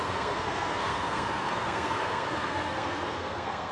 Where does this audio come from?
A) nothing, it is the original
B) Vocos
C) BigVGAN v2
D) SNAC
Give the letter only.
D